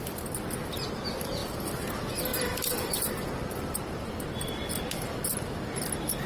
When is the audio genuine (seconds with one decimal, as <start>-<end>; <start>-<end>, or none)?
0.0-1.4; 1.9-2.3; 4.1-6.3